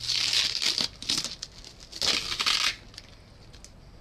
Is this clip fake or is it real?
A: real